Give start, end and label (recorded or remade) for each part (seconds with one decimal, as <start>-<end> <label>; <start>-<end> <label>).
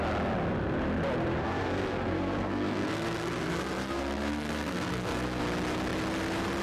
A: 0.0-1.4 recorded; 1.4-5.4 remade; 5.4-6.6 recorded